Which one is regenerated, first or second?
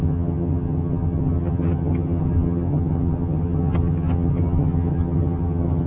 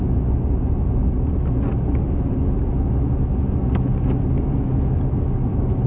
first